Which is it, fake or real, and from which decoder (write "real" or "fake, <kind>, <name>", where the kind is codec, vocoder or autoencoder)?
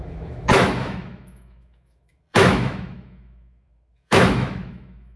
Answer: fake, autoencoder, DAC-VAE